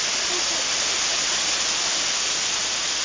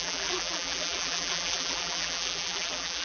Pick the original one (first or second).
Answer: first